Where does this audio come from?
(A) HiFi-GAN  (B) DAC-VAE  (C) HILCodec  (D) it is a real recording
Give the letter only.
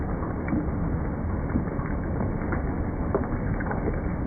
D